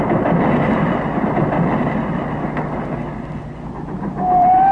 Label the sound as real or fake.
real